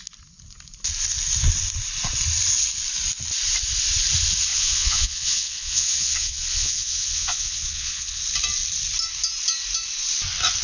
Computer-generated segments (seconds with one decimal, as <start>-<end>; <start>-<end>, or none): 4.5-8.2